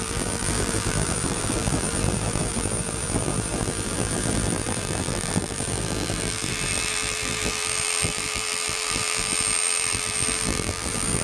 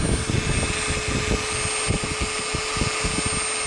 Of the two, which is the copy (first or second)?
first